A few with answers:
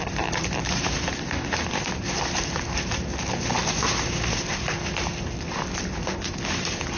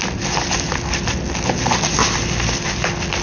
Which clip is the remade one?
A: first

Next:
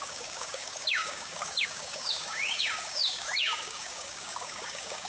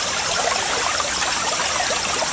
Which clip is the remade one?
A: first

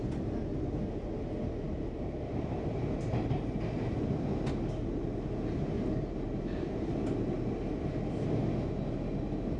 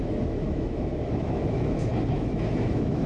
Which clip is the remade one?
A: second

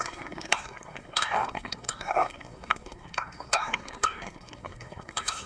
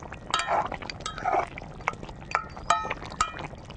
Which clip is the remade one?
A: first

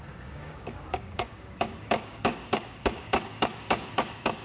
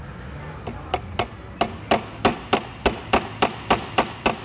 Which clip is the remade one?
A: first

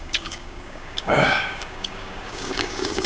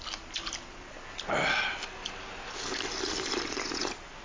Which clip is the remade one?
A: first